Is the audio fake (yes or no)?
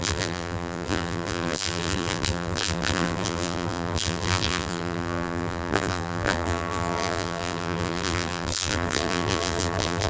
yes